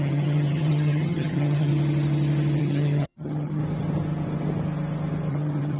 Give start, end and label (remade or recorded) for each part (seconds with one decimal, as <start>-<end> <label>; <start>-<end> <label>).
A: 0.0-1.7 remade; 1.7-2.6 recorded; 2.6-3.6 remade; 3.6-5.3 recorded; 5.3-5.8 remade